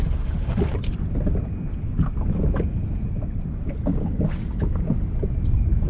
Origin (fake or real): real